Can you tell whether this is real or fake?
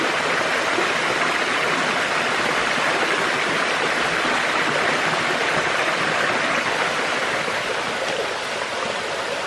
real